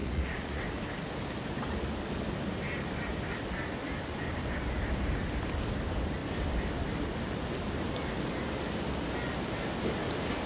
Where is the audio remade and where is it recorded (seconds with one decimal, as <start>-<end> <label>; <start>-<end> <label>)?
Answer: 0.0-0.6 remade; 0.6-10.5 recorded